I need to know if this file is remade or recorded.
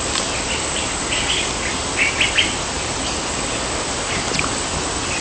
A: recorded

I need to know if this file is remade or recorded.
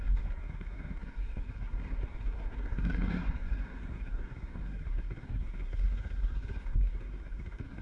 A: remade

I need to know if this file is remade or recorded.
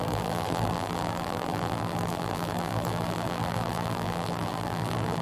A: remade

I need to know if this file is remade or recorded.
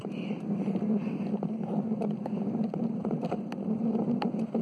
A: recorded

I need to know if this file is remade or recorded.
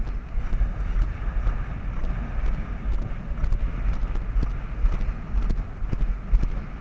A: recorded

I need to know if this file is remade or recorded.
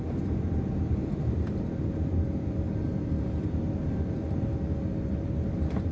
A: remade